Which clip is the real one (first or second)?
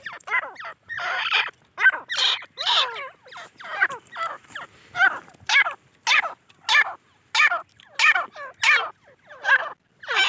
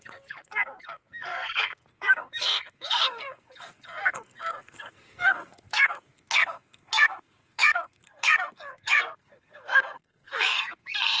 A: first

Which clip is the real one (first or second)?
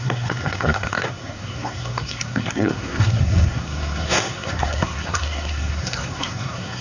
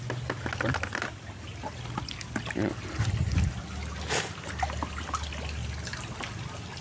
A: second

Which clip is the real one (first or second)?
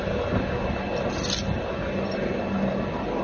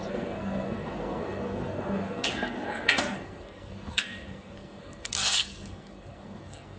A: first